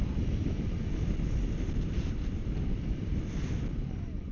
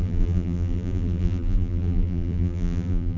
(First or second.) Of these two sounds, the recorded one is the first